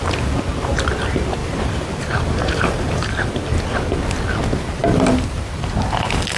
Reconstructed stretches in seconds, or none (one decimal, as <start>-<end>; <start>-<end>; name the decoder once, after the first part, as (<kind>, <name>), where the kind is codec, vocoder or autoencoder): 1.4-3.6 (vocoder, BigVGAN v2); 4.8-5.4